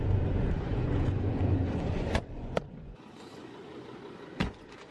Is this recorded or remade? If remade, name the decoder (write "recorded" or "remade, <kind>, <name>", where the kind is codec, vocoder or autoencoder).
remade, vocoder, Vocos